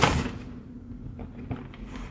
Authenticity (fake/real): real